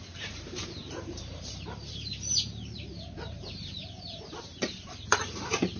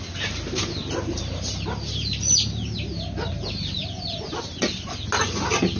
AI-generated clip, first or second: first